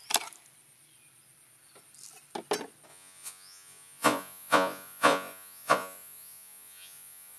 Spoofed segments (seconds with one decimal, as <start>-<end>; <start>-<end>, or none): 2.9-7.4